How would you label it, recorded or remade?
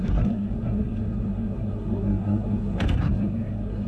remade